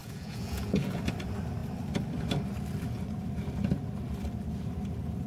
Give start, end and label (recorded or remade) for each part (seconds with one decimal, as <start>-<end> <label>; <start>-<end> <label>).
0.0-1.0 remade; 1.0-5.3 recorded